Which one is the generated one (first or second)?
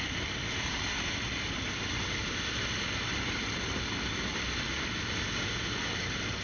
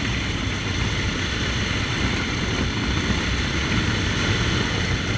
second